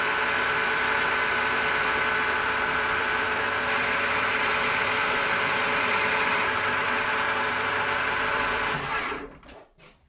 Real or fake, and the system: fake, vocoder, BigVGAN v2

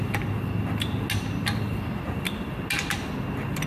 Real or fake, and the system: real